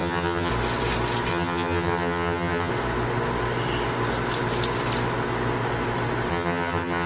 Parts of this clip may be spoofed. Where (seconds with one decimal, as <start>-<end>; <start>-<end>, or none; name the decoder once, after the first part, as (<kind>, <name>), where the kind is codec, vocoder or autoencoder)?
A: 0.0-0.5 (vocoder, HiFi-GAN); 1.3-2.7; 6.3-7.1